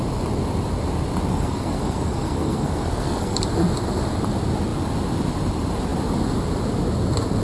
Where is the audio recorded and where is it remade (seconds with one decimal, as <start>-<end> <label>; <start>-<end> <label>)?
0.0-1.3 recorded; 1.3-3.4 remade; 3.4-7.4 recorded